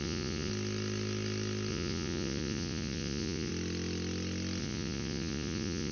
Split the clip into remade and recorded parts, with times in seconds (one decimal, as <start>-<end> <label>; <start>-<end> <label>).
0.0-0.5 remade; 0.5-1.7 recorded; 1.7-3.5 remade; 3.5-4.6 recorded; 4.6-5.9 remade